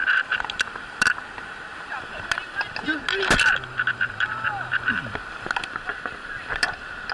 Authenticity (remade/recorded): recorded